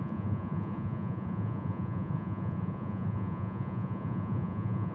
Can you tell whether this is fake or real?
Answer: fake